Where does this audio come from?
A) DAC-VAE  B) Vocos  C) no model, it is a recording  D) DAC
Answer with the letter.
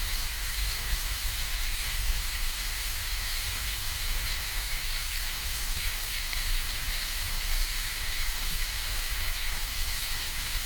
D